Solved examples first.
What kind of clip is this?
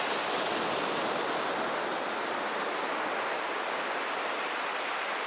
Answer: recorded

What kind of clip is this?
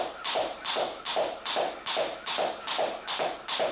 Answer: recorded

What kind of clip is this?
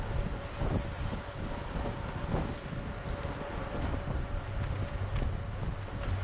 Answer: recorded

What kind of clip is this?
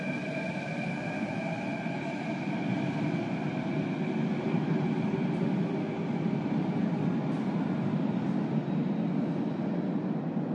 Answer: recorded